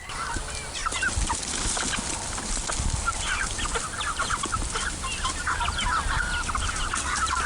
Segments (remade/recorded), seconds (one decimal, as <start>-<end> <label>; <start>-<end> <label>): 0.0-7.5 recorded